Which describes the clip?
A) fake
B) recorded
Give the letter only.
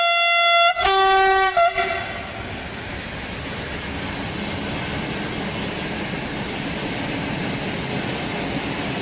B